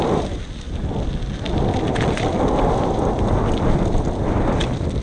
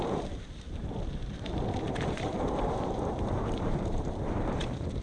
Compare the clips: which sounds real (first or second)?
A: first